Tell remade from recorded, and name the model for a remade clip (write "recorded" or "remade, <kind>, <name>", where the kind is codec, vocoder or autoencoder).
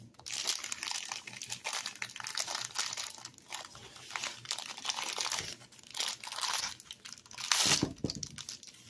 recorded